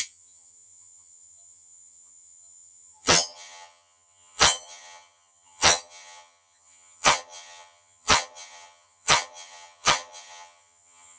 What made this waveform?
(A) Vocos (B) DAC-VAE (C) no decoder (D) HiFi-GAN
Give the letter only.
D